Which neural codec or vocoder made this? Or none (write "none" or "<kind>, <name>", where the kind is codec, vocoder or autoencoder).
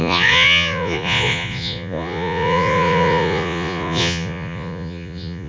vocoder, Vocos